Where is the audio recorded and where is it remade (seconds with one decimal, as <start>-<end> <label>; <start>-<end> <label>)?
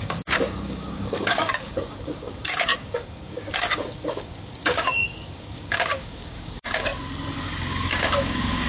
0.0-6.9 remade; 6.9-7.4 recorded; 7.4-8.7 remade